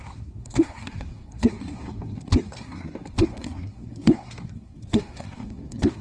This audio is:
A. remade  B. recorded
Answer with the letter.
A